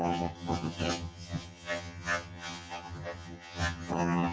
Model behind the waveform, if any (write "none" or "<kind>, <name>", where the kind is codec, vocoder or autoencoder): vocoder, HiFi-GAN